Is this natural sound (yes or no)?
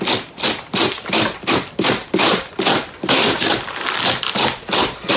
yes